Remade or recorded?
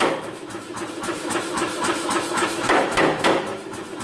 remade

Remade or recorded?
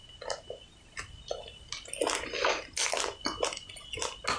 recorded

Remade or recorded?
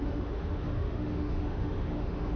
remade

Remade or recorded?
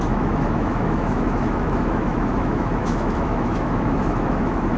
remade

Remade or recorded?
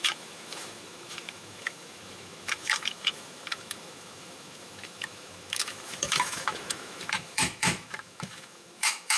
remade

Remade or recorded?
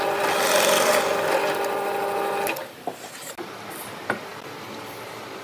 recorded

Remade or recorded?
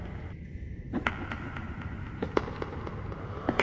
recorded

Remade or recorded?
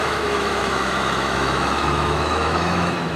remade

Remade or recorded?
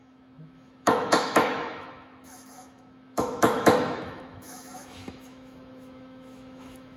remade